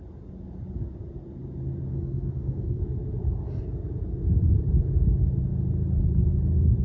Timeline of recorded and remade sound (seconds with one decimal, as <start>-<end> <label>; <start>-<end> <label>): 0.0-1.9 recorded; 1.9-2.8 remade; 2.8-6.8 recorded

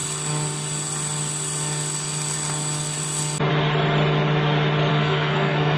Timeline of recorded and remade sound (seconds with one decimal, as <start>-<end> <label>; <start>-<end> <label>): 0.0-4.9 recorded; 4.9-5.8 remade

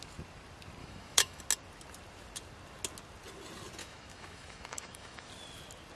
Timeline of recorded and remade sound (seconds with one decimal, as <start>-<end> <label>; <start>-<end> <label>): 0.0-0.8 recorded; 0.8-1.4 remade; 1.4-3.8 recorded; 3.8-5.3 remade; 5.3-6.0 recorded

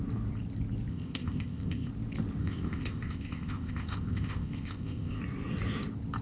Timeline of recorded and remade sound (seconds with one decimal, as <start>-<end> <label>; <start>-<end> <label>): 0.0-0.9 recorded; 0.9-1.9 remade; 1.9-2.4 recorded; 2.4-5.2 remade; 5.2-6.2 recorded

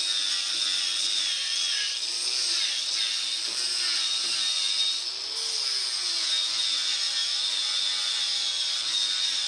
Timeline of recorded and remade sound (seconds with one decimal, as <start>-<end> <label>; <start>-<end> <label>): 0.0-9.5 recorded

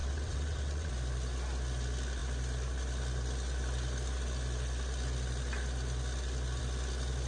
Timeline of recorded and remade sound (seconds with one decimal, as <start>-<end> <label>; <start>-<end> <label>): 0.0-0.9 remade; 0.9-7.3 recorded